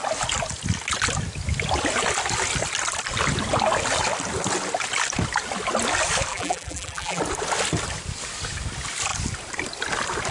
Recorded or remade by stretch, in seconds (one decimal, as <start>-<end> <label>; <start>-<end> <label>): 0.0-6.3 recorded; 6.3-7.2 remade; 7.2-10.3 recorded